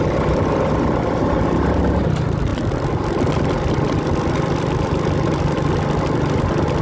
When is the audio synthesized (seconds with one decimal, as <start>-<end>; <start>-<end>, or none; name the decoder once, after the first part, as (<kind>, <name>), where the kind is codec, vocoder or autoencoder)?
none